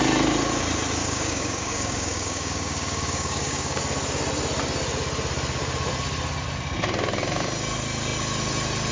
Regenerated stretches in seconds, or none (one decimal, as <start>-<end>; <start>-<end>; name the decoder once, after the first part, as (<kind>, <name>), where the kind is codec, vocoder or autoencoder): 1.0-3.8 (codec, DAC)